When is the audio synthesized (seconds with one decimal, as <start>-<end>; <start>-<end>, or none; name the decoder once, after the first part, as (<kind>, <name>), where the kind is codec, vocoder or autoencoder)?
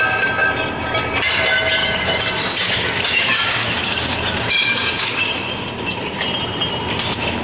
1.8-5.6 (codec, DAC)